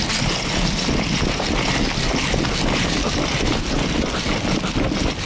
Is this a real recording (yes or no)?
yes